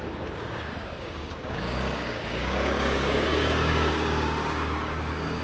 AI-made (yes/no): yes